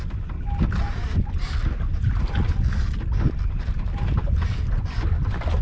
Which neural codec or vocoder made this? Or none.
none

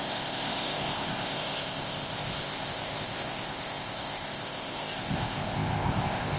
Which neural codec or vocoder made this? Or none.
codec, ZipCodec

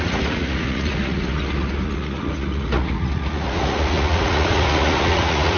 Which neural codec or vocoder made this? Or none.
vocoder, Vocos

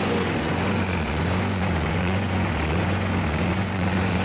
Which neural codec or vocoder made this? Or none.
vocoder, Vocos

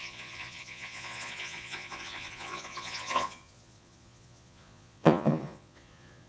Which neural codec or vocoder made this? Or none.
vocoder, Vocos